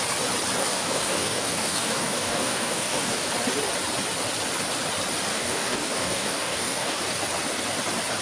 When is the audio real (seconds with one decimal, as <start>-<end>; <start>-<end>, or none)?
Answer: 0.0-0.6; 3.3-5.3; 7.0-8.2